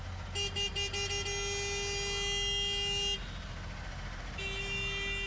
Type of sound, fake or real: real